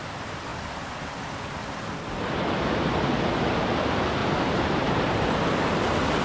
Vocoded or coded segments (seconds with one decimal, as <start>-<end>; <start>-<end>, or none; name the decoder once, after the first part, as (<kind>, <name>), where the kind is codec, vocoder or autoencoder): 4.2-5.1 (vocoder, BigVGAN v2)